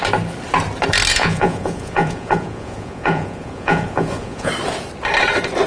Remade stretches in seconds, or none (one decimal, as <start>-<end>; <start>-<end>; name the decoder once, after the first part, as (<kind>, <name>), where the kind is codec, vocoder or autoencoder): 1.1-4.5 (vocoder, Vocos)